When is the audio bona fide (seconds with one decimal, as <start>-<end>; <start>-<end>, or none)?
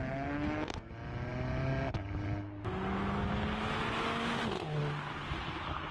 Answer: 0.9-5.9